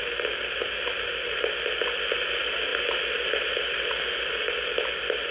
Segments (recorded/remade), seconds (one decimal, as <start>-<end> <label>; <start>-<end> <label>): 0.0-5.3 recorded